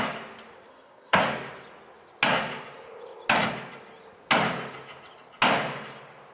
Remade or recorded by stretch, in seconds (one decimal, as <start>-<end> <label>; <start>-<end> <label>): 0.0-0.7 recorded; 0.7-1.2 remade; 1.2-6.3 recorded